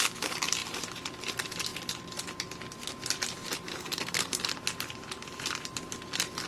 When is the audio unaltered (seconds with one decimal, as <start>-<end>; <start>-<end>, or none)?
0.0-3.7; 4.4-6.5